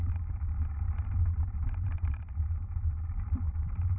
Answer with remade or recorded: remade